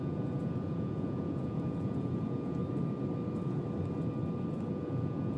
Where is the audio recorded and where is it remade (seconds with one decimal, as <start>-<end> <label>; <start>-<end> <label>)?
0.0-2.6 remade; 2.6-4.7 recorded; 4.7-5.4 remade